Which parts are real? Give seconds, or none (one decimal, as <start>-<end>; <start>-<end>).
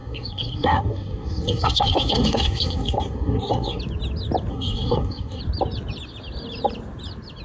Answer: 3.8-4.5; 5.4-7.4